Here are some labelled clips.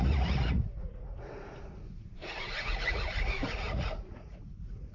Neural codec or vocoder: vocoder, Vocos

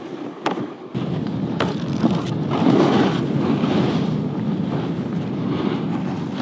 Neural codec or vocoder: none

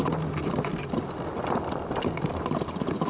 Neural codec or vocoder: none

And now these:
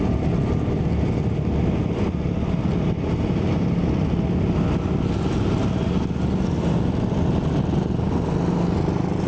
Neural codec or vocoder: none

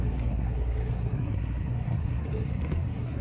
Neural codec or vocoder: codec, SNAC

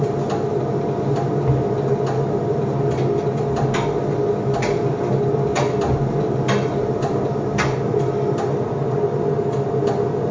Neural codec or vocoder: none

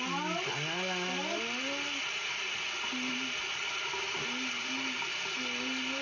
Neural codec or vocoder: none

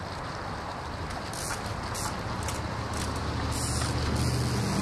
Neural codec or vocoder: none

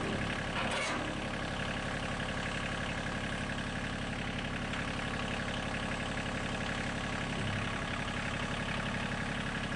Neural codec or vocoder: none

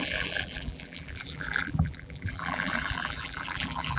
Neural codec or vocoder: vocoder, BigVGAN v2